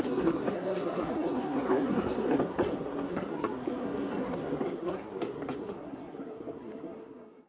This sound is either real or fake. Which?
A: fake